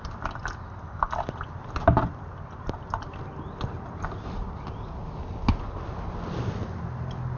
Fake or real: real